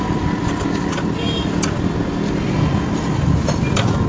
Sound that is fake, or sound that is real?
real